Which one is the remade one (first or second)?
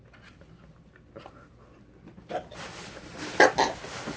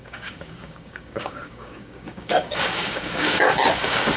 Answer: second